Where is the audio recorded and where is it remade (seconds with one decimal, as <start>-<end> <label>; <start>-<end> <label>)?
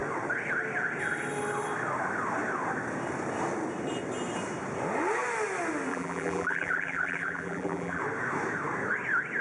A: 0.0-5.9 recorded; 5.9-8.0 remade; 8.0-9.4 recorded